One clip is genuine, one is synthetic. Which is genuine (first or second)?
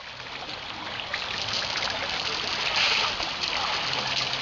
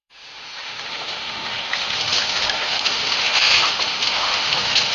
first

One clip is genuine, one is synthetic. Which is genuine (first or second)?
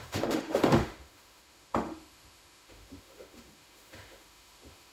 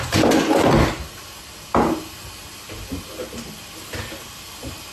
second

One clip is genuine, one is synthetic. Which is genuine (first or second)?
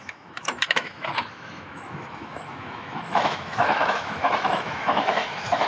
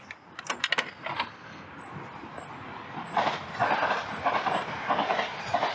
second